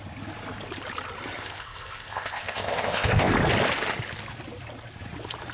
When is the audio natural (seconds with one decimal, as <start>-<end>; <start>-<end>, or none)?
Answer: 0.0-1.4; 3.3-5.5